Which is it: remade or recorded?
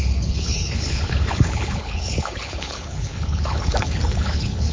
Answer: remade